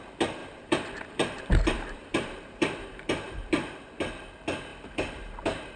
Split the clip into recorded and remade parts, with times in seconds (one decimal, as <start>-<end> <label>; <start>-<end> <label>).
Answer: 0.0-0.4 recorded; 0.4-3.5 remade; 3.5-4.7 recorded; 4.7-5.8 remade